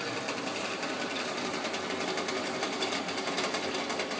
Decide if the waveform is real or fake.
real